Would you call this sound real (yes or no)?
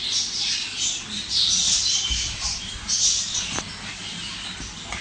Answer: yes